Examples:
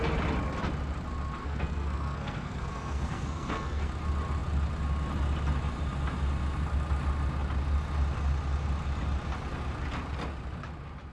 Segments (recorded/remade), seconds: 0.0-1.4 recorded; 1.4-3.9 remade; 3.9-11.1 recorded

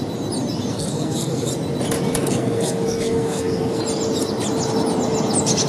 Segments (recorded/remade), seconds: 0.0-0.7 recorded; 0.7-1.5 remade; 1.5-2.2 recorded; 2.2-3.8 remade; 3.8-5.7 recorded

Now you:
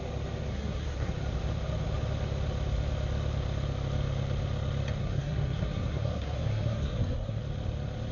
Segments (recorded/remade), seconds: 0.0-0.5 recorded; 0.5-1.1 remade; 1.1-5.0 recorded; 5.0-7.4 remade; 7.4-8.1 recorded

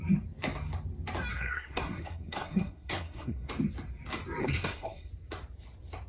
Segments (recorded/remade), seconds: 0.0-1.3 recorded; 1.3-3.5 remade; 3.5-4.4 recorded; 4.4-5.1 remade; 5.1-6.1 recorded